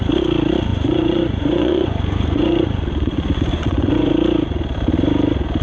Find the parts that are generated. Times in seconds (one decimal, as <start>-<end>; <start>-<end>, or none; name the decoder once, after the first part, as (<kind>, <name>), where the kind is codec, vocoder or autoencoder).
0.7-4.1 (vocoder, Vocos)